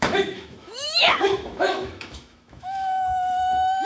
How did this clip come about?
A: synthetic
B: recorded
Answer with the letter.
A